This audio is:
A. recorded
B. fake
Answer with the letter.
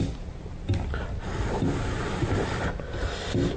A